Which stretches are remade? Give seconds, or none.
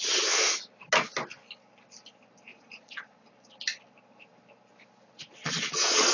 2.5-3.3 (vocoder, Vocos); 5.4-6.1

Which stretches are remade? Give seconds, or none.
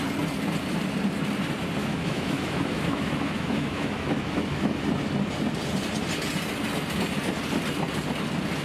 1.8-4.8 (autoencoder, DAC-VAE)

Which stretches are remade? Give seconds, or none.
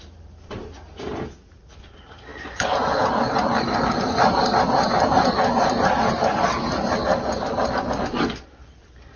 none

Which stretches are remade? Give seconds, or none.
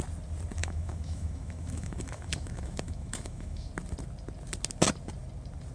0.6-3.7 (autoencoder, DAC-VAE)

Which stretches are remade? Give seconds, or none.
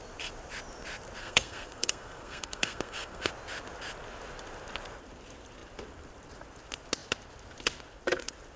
1.2-3.3 (codec, SNAC)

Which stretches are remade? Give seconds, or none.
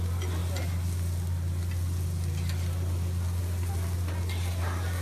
none